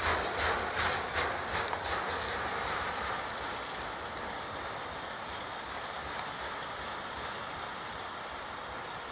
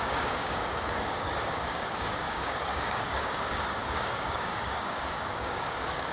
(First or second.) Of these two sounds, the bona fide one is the first